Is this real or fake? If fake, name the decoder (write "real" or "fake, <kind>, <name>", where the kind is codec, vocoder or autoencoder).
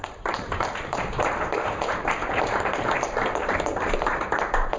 fake, vocoder, BigVGAN v2